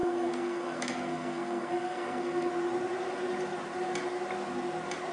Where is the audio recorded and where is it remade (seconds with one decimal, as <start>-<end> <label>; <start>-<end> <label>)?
0.0-2.5 remade; 2.5-5.1 recorded